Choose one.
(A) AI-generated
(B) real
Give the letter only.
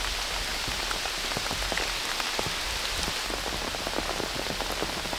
B